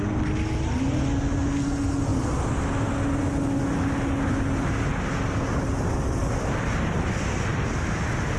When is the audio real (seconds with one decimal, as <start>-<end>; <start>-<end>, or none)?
0.0-2.1; 2.6-8.4

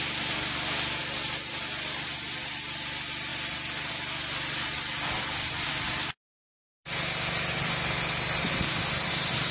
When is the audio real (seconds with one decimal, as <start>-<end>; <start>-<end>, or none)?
0.0-9.5